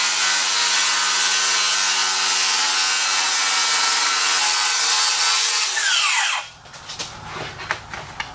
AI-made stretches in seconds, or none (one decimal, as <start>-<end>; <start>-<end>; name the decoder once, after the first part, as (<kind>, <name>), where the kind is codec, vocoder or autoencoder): 2.0-2.8 (vocoder, BigVGAN v2); 3.6-6.4